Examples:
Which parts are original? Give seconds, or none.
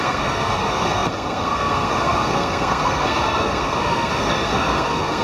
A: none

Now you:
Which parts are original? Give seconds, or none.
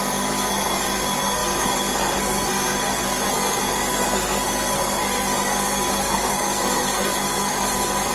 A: none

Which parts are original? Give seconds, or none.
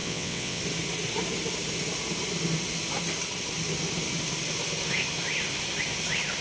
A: 0.6-6.4